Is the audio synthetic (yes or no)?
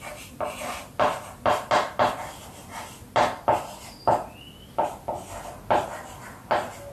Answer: no